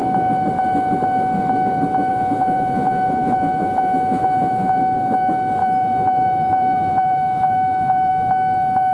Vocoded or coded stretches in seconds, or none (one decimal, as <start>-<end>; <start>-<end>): 2.1-4.8; 5.6-8.1